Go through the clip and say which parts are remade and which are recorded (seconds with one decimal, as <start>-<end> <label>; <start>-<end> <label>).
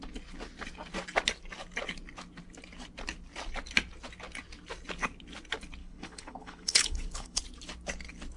0.0-5.8 recorded; 5.8-7.4 remade; 7.4-8.4 recorded